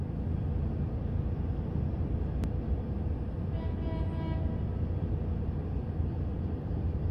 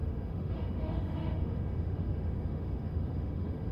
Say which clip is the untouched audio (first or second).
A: first